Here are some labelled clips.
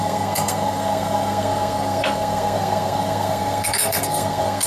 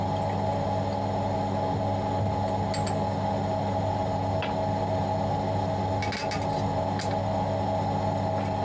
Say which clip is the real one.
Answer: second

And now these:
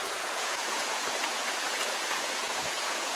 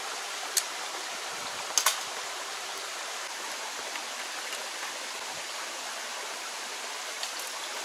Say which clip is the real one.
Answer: second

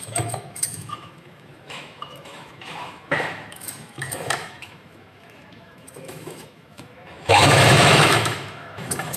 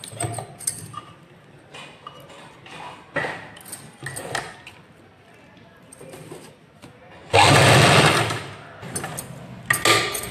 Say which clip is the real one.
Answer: second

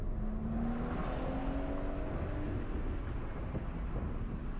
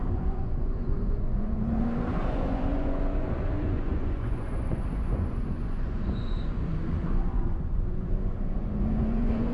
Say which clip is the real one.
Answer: first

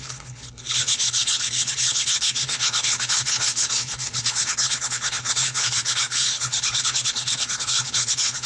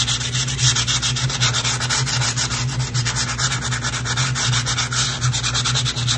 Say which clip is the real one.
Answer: second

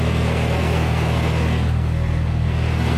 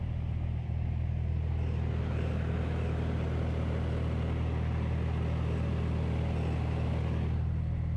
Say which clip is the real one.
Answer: second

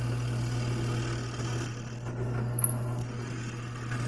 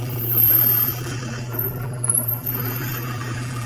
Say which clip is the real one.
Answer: first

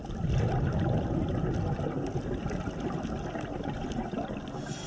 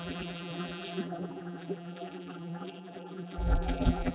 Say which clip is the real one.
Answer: first